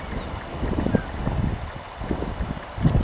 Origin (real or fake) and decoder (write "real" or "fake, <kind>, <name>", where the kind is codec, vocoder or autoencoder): real